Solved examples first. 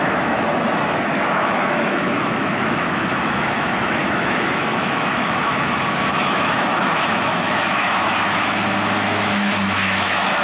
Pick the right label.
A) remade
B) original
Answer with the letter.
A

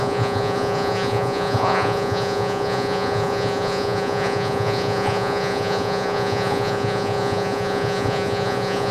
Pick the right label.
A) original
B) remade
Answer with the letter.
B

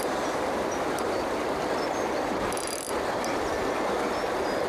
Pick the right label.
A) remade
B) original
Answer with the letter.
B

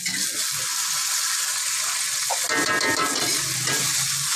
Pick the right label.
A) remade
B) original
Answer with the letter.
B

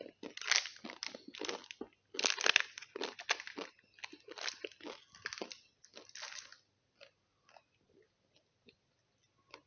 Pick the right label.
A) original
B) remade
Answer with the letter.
A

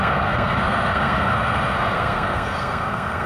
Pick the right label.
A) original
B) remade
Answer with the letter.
B